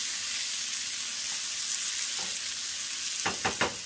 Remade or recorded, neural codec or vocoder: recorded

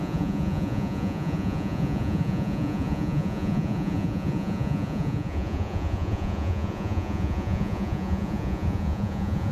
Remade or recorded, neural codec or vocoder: remade, vocoder, Vocos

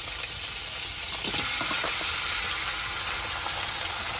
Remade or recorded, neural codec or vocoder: recorded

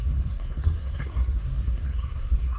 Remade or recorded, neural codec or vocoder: remade, codec, SNAC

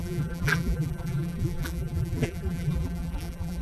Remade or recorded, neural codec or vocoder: remade, vocoder, BigVGAN v2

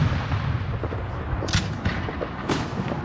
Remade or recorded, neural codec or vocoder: recorded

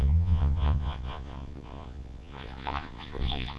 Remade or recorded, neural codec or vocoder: remade, vocoder, Vocos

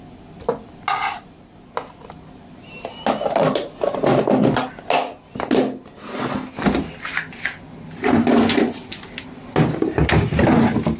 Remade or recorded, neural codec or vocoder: recorded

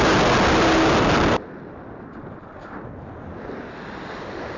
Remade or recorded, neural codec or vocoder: recorded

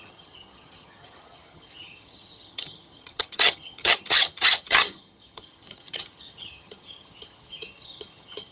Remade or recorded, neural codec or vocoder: remade, vocoder, HiFi-GAN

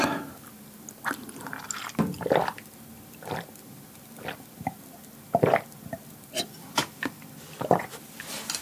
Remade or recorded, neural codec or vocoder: recorded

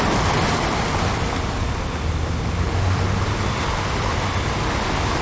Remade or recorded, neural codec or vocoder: recorded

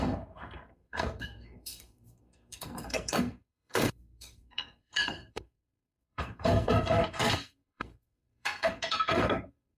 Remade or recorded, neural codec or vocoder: remade, codec, SNAC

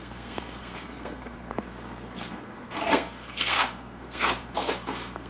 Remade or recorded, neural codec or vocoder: remade, codec, SNAC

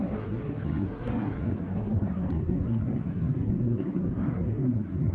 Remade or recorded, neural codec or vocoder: remade, codec, SNAC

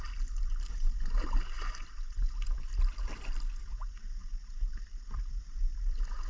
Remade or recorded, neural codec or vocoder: recorded